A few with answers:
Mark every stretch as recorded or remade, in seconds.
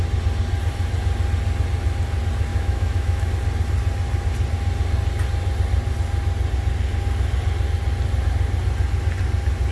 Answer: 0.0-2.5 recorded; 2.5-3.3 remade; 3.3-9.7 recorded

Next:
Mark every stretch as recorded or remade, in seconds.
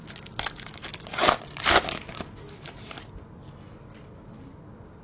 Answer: 0.0-5.0 recorded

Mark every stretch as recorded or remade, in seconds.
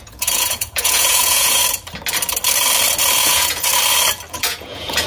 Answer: 0.0-1.6 remade; 1.6-3.2 recorded; 3.2-3.7 remade; 3.7-4.3 recorded; 4.3-5.1 remade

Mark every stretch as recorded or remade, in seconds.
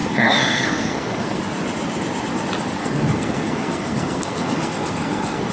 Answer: 0.0-1.4 remade; 1.4-2.8 recorded; 2.8-5.5 remade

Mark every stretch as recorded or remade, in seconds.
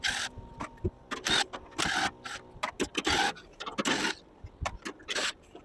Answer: 0.0-0.5 remade; 0.5-3.3 recorded; 3.3-3.7 remade; 3.7-5.1 recorded; 5.1-5.6 remade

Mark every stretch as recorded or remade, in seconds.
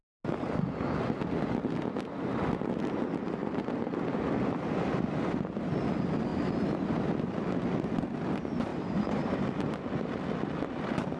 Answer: 0.0-3.4 recorded; 3.4-4.2 remade; 4.2-6.3 recorded; 6.3-6.9 remade; 6.9-8.7 recorded; 8.7-10.1 remade; 10.1-11.2 recorded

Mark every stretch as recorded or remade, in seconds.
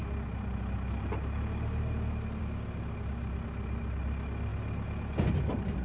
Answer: 0.0-5.8 recorded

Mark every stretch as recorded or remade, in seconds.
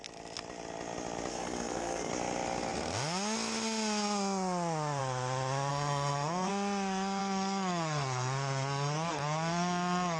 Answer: 0.0-1.3 recorded; 1.3-2.1 remade; 2.1-5.7 recorded; 5.7-6.5 remade; 6.5-7.2 recorded; 7.2-10.2 remade